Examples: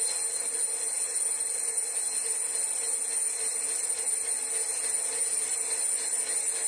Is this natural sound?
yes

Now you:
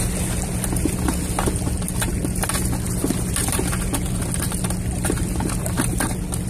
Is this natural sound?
yes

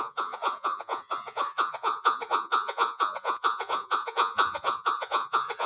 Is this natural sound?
no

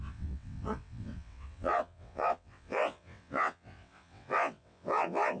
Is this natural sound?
no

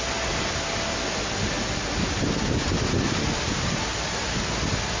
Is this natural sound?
yes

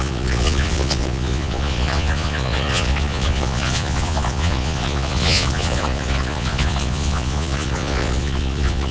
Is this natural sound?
no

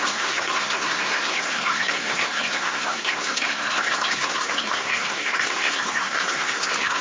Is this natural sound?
no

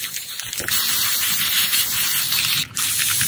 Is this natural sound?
yes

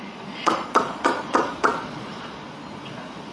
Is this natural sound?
no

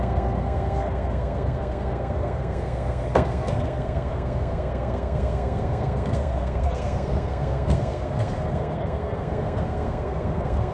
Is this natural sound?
no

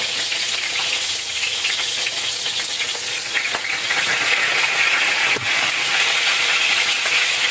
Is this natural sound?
no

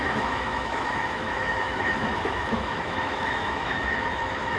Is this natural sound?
no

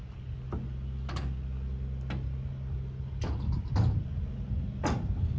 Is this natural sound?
yes